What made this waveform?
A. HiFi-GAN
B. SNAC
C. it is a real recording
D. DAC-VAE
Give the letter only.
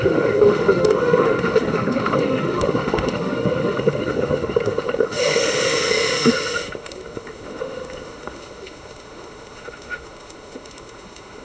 D